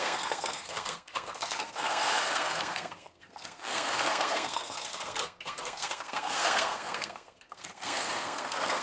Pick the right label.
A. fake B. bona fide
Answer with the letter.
A